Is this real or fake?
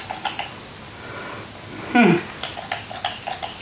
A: real